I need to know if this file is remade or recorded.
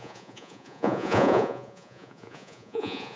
remade